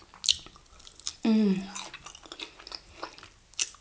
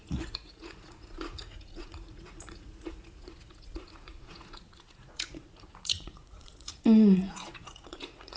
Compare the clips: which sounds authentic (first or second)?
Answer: first